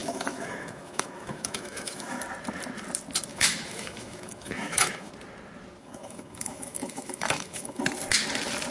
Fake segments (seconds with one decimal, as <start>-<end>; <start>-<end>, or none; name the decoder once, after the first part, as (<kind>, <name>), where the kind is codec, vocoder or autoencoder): 0.0-2.2 (autoencoder, DAC-VAE); 3.3-5.1; 5.8-7.8